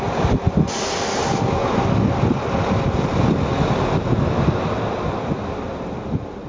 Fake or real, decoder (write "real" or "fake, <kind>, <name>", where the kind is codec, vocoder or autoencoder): real